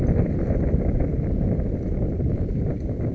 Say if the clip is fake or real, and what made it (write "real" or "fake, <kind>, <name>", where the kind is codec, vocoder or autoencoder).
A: real